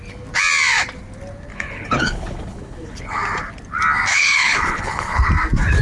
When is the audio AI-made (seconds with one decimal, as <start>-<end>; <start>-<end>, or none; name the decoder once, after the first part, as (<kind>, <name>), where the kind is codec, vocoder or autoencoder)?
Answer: 1.5-3.2 (codec, HILCodec); 4.1-5.3